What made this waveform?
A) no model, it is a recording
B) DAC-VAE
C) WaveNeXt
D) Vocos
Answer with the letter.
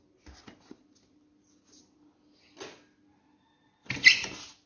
A